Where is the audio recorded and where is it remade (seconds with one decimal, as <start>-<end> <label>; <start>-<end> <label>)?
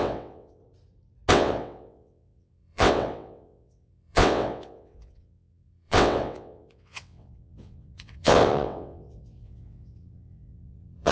0.0-0.6 remade; 0.6-1.3 recorded; 1.3-11.1 remade